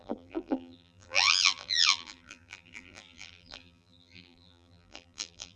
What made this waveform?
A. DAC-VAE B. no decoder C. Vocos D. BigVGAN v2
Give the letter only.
D